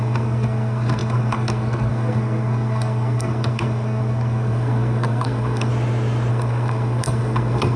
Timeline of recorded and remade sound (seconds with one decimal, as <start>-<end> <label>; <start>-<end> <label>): 0.0-5.7 remade; 5.7-6.3 recorded; 6.3-7.8 remade